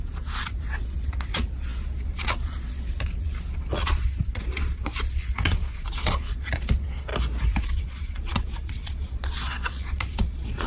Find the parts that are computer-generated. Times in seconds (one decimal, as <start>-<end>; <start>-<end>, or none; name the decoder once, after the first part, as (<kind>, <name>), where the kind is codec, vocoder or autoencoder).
0.0-7.1 (vocoder, Vocos); 7.6-10.7